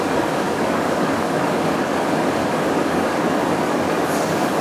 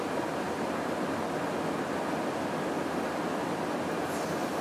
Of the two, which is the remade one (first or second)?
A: first